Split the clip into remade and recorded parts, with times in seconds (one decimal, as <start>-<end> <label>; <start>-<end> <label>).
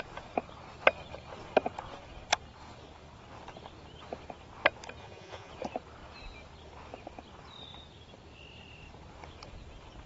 0.0-5.0 recorded; 5.0-5.5 remade; 5.5-10.1 recorded